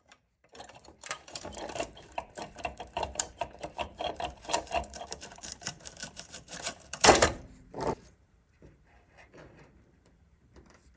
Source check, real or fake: fake